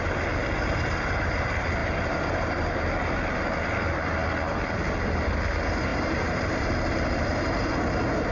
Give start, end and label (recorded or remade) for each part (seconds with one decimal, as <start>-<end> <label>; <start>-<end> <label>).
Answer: 0.0-1.8 recorded; 1.8-2.6 remade; 2.6-5.9 recorded; 5.9-7.8 remade; 7.8-8.3 recorded